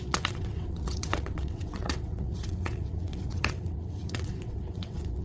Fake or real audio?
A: fake